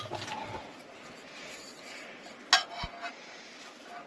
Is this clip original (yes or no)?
yes